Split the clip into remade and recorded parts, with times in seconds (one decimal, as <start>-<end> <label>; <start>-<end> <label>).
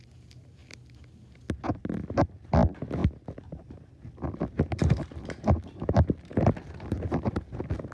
0.0-7.9 recorded